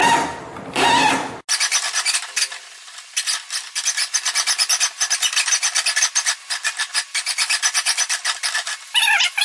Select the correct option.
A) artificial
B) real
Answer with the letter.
B